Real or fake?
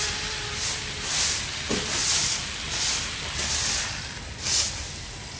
real